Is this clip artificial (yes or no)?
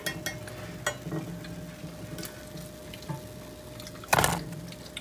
no